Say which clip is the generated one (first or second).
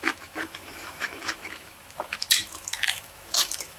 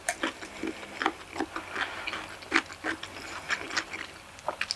first